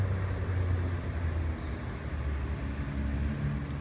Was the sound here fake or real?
real